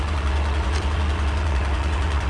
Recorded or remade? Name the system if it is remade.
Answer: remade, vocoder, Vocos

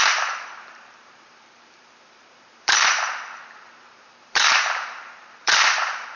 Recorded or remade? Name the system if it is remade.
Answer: remade, vocoder, BigVGAN v2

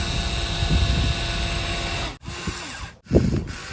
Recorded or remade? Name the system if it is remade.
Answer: recorded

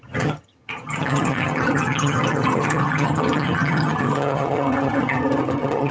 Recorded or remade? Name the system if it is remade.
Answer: remade, vocoder, HiFi-GAN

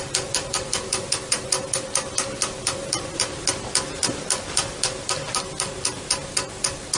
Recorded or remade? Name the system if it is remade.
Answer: recorded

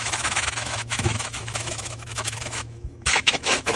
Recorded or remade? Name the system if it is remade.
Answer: remade, autoencoder, DAC-VAE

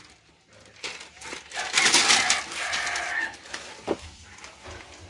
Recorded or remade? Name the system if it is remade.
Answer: recorded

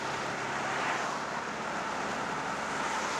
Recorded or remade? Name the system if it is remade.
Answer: recorded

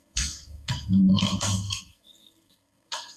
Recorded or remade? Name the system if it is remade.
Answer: remade, codec, SNAC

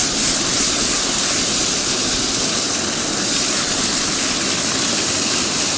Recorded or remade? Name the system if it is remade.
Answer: recorded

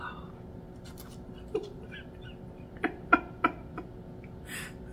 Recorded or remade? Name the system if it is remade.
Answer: recorded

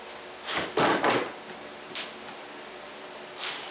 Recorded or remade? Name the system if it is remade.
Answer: recorded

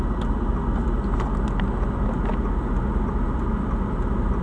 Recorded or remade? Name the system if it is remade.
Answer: recorded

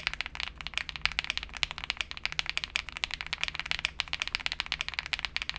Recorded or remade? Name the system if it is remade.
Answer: recorded